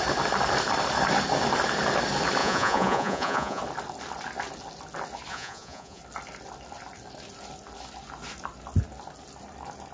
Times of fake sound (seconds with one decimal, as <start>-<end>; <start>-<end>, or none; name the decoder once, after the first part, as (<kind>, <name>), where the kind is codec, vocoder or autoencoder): 2.4-3.6 (vocoder, Vocos); 5.3-6.0